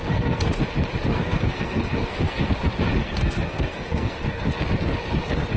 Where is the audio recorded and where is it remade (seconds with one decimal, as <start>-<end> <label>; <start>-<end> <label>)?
0.0-0.5 remade; 0.5-1.1 recorded; 1.1-2.5 remade; 2.5-3.0 recorded; 3.0-4.4 remade; 4.4-5.6 recorded